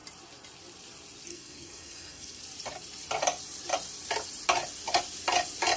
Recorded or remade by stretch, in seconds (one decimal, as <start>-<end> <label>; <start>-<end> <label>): 0.0-1.3 recorded; 1.3-2.4 remade; 2.4-5.8 recorded